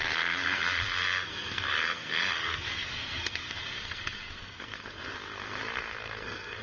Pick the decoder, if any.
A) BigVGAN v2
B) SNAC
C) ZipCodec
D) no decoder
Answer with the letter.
B